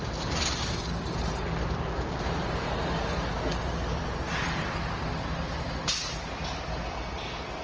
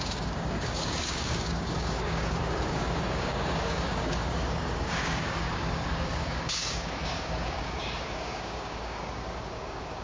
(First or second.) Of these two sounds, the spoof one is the second